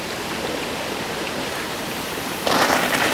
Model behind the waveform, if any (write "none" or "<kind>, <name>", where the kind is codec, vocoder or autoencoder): vocoder, BigVGAN v2